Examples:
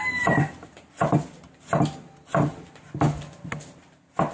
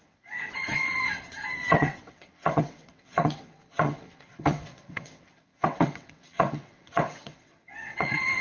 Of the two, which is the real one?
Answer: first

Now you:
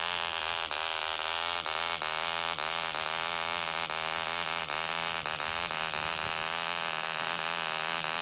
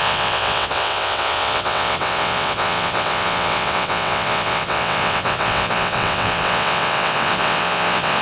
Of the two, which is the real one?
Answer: first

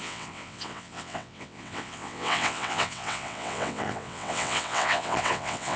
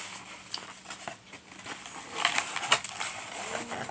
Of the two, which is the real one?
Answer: second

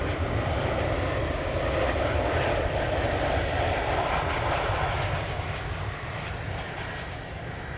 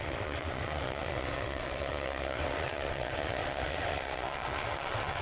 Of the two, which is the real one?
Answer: first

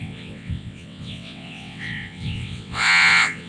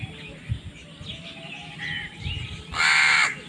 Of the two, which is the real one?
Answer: second